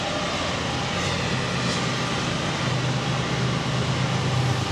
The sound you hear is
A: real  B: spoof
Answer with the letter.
A